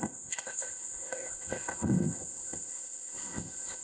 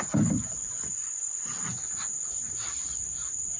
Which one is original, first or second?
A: second